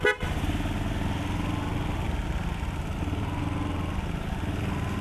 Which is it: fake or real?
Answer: real